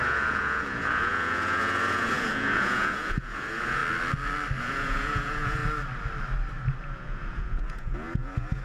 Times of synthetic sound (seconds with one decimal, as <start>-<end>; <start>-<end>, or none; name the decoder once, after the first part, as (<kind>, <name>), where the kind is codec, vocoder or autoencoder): 0.0-3.8 (vocoder, Vocos); 4.6-5.6; 6.8-8.6